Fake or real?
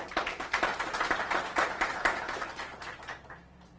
fake